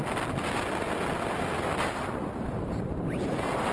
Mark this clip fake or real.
real